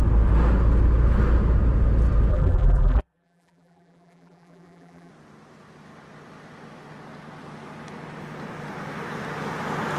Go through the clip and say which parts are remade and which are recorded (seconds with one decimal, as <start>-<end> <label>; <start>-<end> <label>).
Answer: 0.0-2.3 recorded; 2.3-5.1 remade; 5.1-10.0 recorded